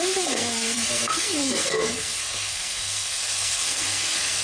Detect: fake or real fake